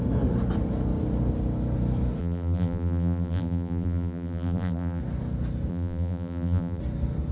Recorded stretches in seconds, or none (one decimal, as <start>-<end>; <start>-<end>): 0.0-2.2; 5.0-5.7; 6.8-7.3